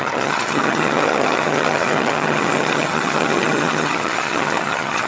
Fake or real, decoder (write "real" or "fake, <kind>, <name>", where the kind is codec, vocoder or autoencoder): fake, vocoder, HiFi-GAN